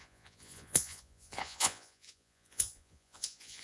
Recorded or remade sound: remade